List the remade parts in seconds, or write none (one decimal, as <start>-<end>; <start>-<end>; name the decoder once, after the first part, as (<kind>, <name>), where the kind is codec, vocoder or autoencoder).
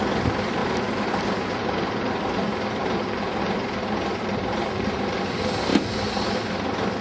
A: 0.6-1.1 (vocoder, BigVGAN v2); 2.8-5.2; 5.7-6.4